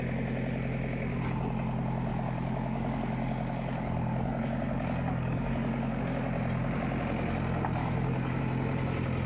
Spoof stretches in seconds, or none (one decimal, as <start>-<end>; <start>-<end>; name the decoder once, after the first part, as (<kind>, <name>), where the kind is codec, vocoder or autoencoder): 2.1-6.0 (codec, DAC); 7.8-8.4